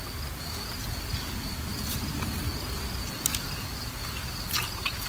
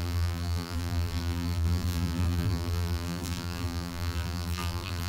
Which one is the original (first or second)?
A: first